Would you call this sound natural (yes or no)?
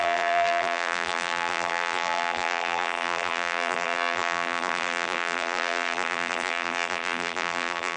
no